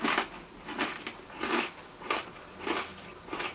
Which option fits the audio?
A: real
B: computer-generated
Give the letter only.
A